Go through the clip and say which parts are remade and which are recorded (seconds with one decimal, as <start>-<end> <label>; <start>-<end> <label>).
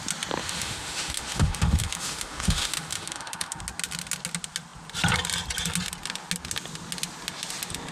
0.0-0.4 recorded; 0.4-3.6 remade; 3.6-7.9 recorded